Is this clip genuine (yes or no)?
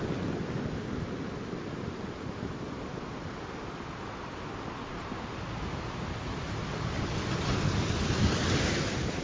yes